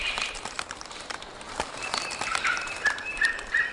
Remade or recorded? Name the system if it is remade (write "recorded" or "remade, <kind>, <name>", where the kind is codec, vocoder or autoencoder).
remade, vocoder, BigVGAN v2